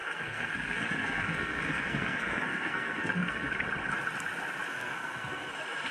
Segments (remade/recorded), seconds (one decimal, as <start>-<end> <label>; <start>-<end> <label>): 0.0-3.5 remade; 3.5-4.7 recorded; 4.7-5.5 remade; 5.5-5.9 recorded